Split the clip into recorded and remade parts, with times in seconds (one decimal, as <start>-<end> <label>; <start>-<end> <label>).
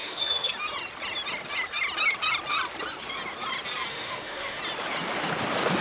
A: 0.0-0.5 remade; 0.5-3.9 recorded; 3.9-4.6 remade; 4.6-5.8 recorded